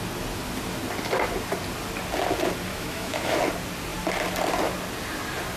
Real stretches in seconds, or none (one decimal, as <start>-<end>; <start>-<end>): 0.0-2.7; 3.4-5.6